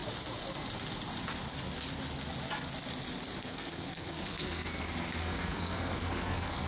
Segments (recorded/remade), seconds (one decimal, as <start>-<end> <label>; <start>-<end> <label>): 0.0-3.4 recorded; 3.4-4.8 remade; 4.8-5.2 recorded; 5.2-6.7 remade